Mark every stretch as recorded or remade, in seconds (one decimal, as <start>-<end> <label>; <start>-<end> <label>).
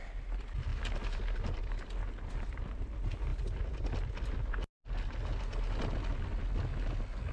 0.0-7.3 recorded